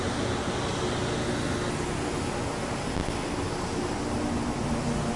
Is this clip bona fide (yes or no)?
yes